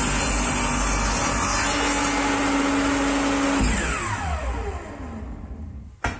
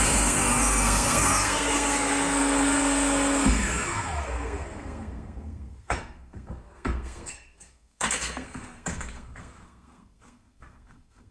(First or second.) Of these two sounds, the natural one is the first